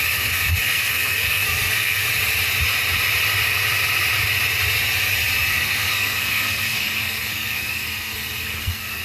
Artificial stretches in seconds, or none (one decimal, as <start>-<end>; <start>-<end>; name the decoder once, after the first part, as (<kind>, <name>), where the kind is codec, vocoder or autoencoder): 0.0-2.0 (codec, SNAC); 5.5-9.0